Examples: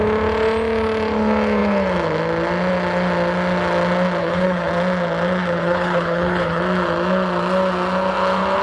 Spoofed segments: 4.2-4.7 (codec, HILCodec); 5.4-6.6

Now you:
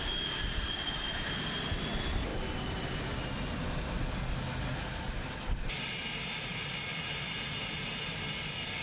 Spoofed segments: none

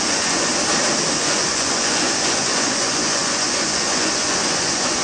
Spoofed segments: 0.0-0.5 (vocoder, Vocos); 1.2-5.0